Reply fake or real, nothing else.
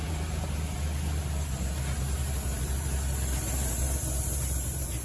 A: fake